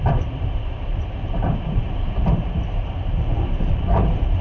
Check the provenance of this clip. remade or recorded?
remade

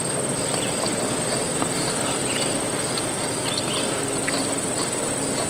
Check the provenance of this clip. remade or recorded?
remade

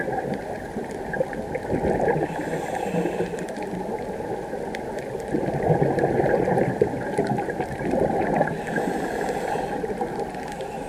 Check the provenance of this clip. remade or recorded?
recorded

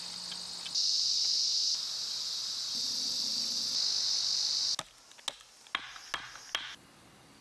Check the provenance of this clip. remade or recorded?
recorded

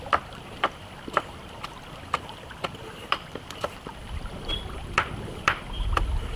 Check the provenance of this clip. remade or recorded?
remade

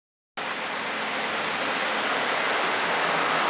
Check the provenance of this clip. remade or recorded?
recorded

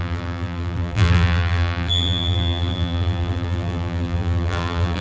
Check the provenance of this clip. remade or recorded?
remade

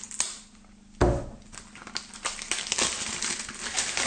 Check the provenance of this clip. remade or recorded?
recorded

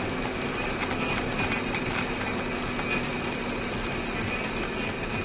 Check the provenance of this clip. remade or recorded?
recorded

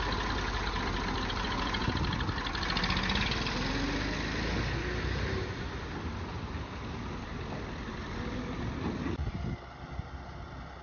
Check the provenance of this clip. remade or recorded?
recorded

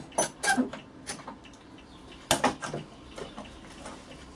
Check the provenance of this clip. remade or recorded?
recorded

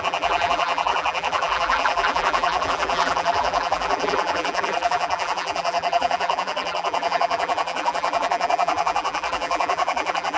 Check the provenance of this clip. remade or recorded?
remade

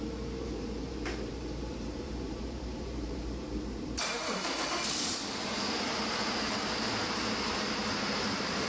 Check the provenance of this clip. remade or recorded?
remade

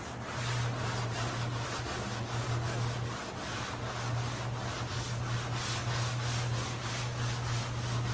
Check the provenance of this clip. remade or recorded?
recorded